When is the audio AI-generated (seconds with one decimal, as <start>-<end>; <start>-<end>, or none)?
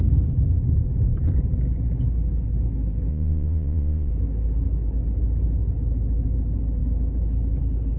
3.1-4.1